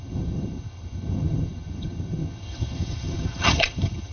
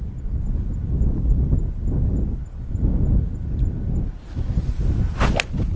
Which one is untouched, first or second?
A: second